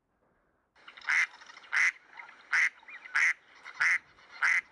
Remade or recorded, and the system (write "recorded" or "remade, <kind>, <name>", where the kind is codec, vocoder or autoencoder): recorded